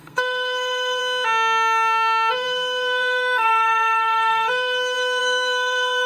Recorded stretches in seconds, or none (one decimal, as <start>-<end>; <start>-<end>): 1.0-2.3